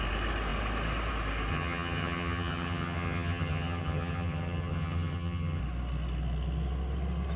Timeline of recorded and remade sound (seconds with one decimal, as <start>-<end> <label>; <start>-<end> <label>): 0.0-1.5 recorded; 1.5-5.6 remade; 5.6-7.4 recorded